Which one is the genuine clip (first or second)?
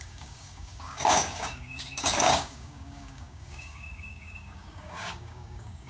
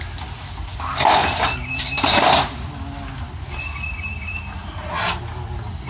second